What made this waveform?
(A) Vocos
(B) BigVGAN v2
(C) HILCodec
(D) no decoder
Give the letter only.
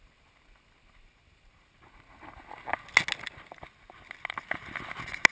D